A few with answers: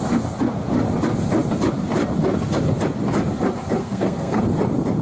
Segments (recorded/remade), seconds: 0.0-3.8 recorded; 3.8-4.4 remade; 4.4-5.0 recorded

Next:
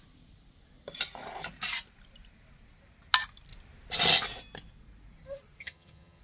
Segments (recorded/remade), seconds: 0.0-5.6 recorded; 5.6-6.2 remade

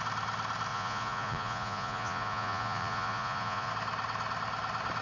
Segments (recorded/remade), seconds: 0.0-0.7 recorded; 0.7-3.7 remade; 3.7-5.0 recorded

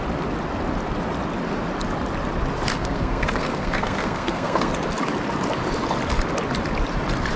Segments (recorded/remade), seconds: 0.0-2.7 recorded; 2.7-4.7 remade; 4.7-7.4 recorded

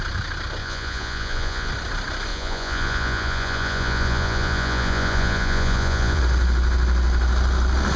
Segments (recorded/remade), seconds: 0.0-0.6 recorded; 0.6-1.7 remade; 1.7-2.3 recorded; 2.3-6.2 remade; 6.2-8.0 recorded

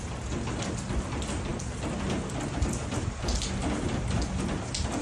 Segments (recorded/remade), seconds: 0.0-5.0 recorded

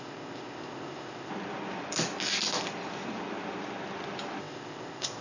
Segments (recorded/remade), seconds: 0.0-1.3 remade; 1.3-4.4 recorded; 4.4-5.2 remade

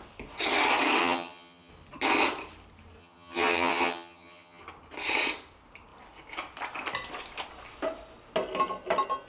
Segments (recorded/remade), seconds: 0.0-1.0 recorded; 1.0-1.7 remade; 1.7-3.0 recorded; 3.0-4.6 remade; 4.6-9.3 recorded